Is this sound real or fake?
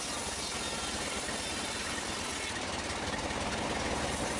real